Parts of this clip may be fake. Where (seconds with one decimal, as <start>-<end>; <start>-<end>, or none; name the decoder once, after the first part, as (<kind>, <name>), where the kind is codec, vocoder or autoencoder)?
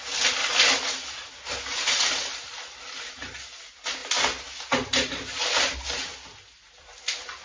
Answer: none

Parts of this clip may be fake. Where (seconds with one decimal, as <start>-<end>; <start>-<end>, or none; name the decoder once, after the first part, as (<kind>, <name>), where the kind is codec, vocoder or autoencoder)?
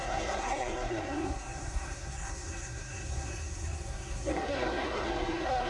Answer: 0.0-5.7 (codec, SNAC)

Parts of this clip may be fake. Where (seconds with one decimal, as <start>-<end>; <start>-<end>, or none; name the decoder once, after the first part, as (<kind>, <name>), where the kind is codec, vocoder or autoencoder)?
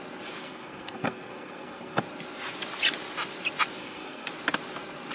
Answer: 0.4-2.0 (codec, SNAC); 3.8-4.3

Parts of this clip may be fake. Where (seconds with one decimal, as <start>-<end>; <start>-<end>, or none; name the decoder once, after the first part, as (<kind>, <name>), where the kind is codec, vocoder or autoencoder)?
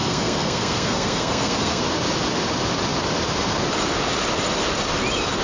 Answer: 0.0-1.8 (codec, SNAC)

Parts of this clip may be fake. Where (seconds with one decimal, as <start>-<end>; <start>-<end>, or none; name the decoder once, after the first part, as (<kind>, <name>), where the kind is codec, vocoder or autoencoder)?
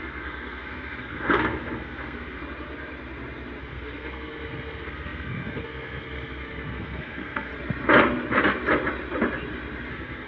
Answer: 0.0-2.4 (codec, SNAC); 3.6-7.5; 9.9-10.3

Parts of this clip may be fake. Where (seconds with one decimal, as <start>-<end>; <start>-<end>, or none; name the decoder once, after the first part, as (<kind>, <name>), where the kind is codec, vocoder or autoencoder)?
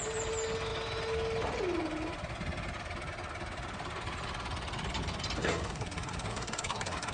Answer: 5.4-7.1 (codec, SNAC)